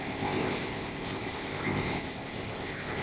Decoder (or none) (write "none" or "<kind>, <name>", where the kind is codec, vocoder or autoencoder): codec, ZipCodec